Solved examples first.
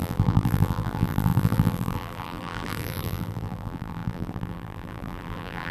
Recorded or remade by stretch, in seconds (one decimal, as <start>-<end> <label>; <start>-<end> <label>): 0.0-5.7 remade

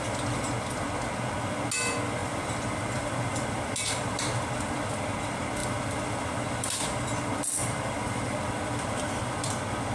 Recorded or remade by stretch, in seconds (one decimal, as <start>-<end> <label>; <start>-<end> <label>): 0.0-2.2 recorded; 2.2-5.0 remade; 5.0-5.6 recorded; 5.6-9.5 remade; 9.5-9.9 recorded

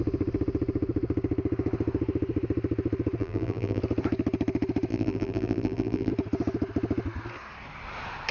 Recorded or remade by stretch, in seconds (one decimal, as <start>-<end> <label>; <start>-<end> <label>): 0.0-3.2 recorded; 3.2-3.8 remade; 3.8-4.9 recorded; 4.9-6.1 remade; 6.1-8.3 recorded